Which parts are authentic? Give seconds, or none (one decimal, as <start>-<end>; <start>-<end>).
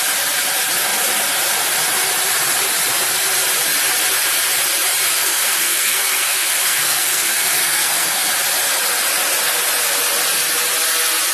0.0-5.1; 8.3-11.3